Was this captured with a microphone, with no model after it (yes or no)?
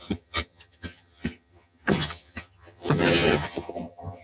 no